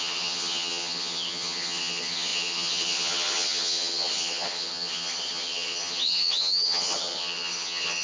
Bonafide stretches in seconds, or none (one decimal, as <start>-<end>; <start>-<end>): none